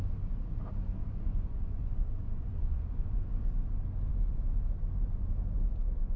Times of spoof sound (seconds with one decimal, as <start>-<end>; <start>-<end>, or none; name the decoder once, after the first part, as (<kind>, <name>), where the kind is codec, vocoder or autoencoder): 1.0-3.3 (vocoder, Vocos)